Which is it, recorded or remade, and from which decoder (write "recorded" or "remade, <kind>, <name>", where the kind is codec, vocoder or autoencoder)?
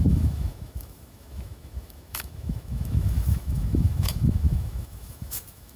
remade, autoencoder, DAC-VAE